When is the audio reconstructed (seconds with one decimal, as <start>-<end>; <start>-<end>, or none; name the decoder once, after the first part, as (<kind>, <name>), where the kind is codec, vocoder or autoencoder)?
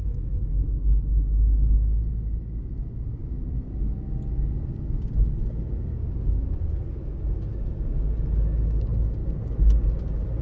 none